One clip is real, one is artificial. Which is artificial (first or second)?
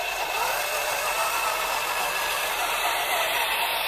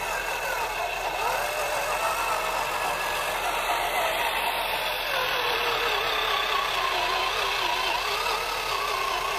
first